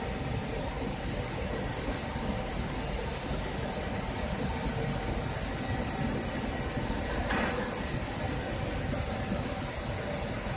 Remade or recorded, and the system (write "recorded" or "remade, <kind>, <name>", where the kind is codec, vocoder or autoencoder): recorded